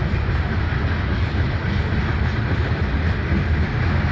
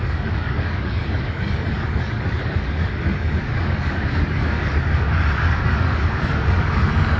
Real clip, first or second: first